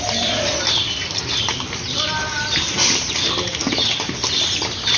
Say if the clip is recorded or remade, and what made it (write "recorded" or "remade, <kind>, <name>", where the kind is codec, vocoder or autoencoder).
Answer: recorded